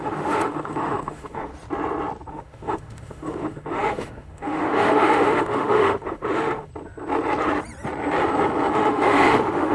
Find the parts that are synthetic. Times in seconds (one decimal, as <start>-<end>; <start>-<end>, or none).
0.0-1.5; 2.3-6.7; 8.7-9.7